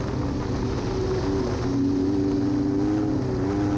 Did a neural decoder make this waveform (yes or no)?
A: no